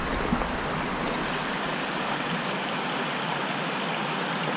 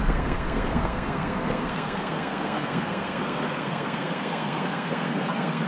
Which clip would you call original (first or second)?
first